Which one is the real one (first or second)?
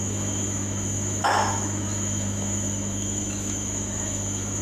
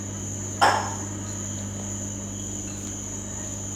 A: second